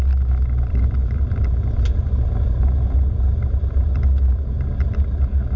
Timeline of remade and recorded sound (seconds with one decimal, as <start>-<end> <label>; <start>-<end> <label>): 0.0-5.6 recorded

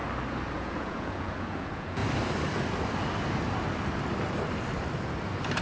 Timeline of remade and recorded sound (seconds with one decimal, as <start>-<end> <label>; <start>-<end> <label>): 0.0-0.6 recorded; 0.6-2.0 remade; 2.0-5.6 recorded

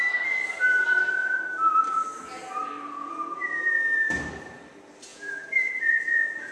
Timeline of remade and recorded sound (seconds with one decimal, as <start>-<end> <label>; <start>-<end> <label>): 0.0-1.2 recorded; 1.2-2.0 remade; 2.0-3.0 recorded; 3.0-3.6 remade; 3.6-5.1 recorded; 5.1-6.5 remade

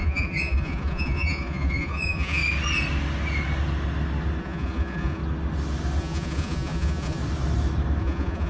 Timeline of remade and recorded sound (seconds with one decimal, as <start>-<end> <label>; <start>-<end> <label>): 0.0-2.4 remade; 2.4-4.4 recorded; 4.4-5.2 remade; 5.2-6.0 recorded; 6.0-7.2 remade; 7.2-8.0 recorded; 8.0-8.5 remade

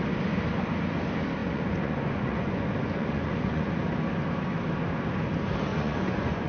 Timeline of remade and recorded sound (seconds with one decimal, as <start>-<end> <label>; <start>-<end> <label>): 0.0-1.4 recorded; 1.4-3.7 remade; 3.7-5.7 recorded; 5.7-6.5 remade

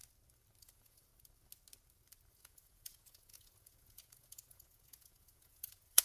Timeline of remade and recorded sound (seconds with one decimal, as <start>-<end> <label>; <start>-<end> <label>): 0.0-0.6 recorded; 0.6-1.1 remade; 1.1-2.3 recorded; 2.3-6.0 remade